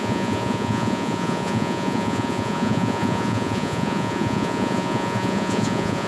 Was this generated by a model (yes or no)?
yes